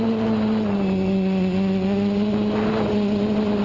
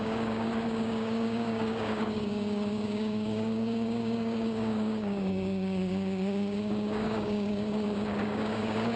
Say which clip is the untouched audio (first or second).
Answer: first